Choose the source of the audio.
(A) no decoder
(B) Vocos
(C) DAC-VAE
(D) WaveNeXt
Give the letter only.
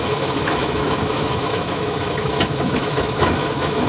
C